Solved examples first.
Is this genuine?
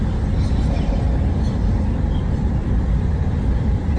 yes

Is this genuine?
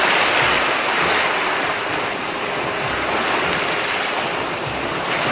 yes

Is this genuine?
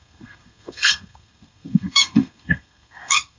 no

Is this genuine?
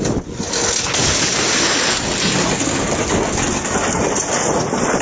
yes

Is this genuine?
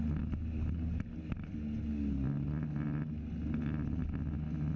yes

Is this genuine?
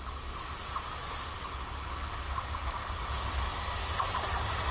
yes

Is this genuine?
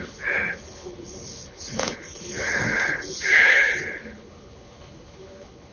no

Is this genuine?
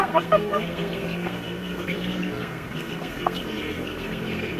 no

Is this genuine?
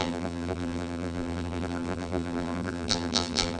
no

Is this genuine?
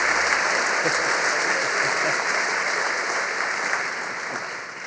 yes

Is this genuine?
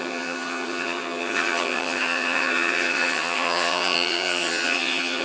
no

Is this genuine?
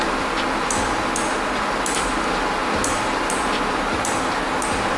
yes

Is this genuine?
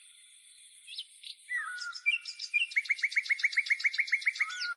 no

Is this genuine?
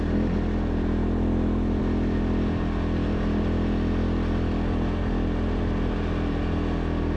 yes